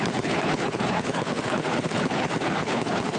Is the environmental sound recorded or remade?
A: remade